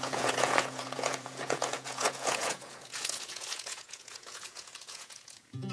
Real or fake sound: fake